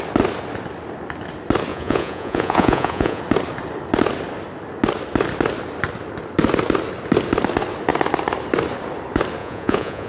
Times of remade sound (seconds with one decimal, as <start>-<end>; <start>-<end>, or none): 1.7-3.2; 9.4-10.1